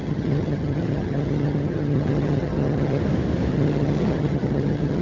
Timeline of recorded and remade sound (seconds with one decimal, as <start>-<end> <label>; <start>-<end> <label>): 0.0-3.0 remade; 3.0-3.5 recorded; 3.5-5.0 remade